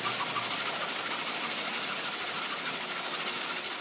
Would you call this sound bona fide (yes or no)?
yes